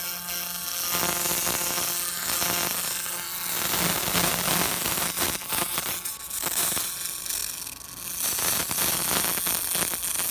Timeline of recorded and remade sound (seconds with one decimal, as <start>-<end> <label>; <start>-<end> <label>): 0.0-10.3 recorded